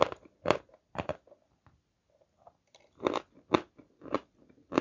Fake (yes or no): no